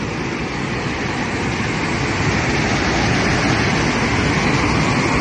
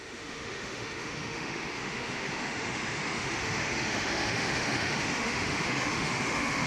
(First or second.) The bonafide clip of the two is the first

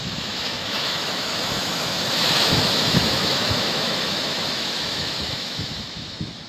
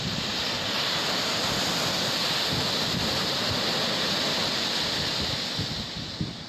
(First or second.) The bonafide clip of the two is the second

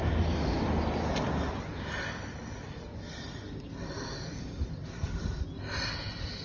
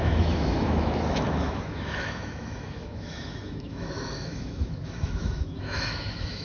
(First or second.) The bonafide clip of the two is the first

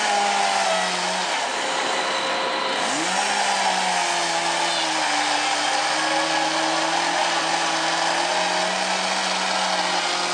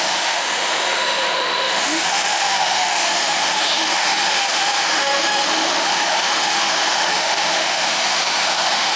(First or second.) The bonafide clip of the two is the first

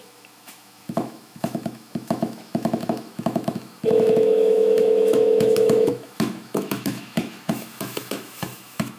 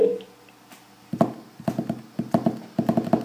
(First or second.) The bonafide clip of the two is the second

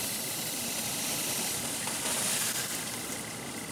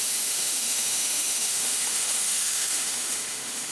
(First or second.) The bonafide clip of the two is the first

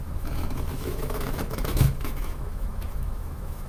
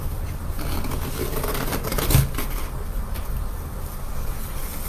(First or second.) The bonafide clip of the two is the second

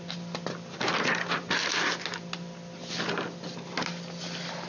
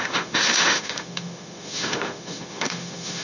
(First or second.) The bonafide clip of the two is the first